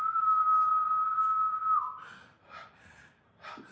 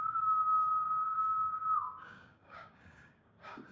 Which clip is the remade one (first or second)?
second